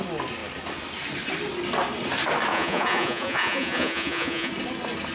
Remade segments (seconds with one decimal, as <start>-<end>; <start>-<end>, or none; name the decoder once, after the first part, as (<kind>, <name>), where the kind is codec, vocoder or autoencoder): 2.5-4.5 (vocoder, Vocos)